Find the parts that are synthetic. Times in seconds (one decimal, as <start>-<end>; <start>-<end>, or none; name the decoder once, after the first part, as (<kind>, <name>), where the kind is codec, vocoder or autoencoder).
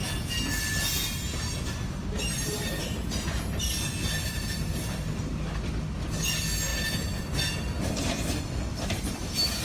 2.0-2.7 (vocoder, BigVGAN v2); 4.0-5.2